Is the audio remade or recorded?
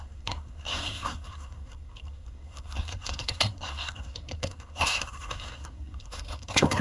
remade